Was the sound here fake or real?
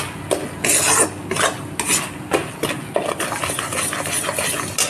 real